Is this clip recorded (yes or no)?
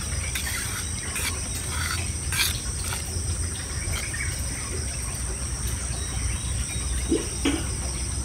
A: yes